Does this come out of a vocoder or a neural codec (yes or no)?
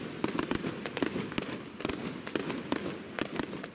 no